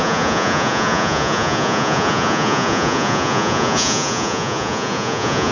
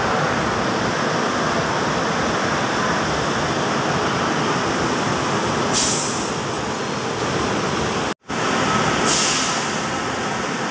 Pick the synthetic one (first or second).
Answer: first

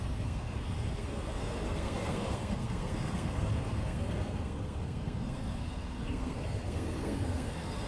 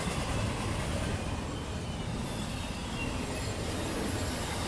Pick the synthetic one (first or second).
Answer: first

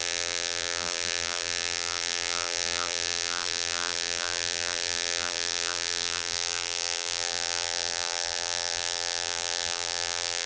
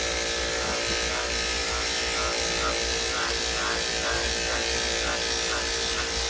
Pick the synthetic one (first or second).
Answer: first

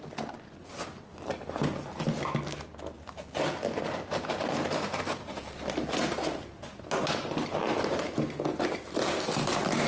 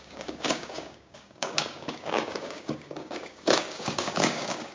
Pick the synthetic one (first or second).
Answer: second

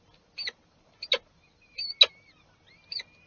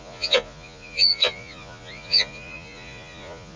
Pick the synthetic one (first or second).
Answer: second